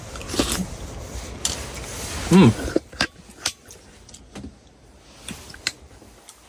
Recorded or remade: recorded